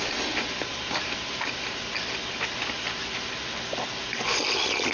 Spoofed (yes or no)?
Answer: no